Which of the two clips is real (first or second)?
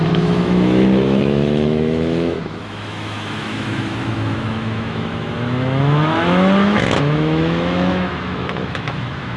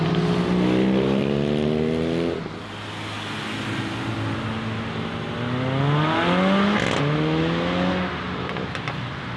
second